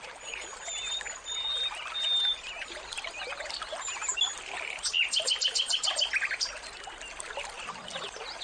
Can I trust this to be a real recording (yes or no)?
yes